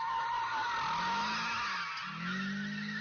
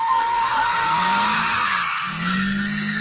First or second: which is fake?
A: second